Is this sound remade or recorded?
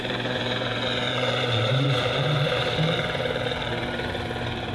remade